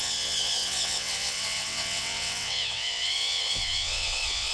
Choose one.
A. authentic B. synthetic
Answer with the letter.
B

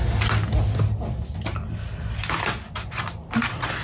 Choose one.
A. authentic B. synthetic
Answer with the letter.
A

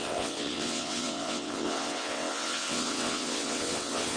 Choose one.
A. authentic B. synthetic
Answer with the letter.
B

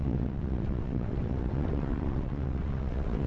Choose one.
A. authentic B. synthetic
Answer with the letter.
B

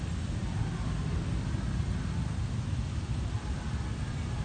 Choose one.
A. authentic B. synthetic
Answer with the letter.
A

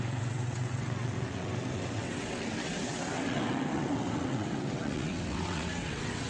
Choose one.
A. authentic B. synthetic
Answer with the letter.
B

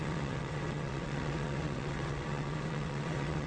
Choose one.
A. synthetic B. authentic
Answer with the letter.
A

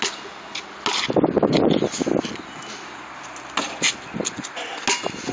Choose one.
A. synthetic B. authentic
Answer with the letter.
B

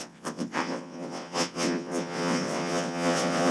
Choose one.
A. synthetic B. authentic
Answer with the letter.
A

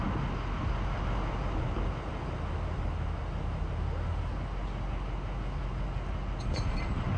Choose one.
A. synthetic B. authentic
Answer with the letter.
B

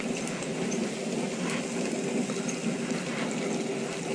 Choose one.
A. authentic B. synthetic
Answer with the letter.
A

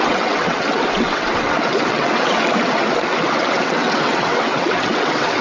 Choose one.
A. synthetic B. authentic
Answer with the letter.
A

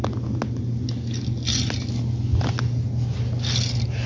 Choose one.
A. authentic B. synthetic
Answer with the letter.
A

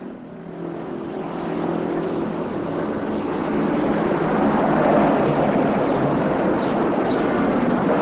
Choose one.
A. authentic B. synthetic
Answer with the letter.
A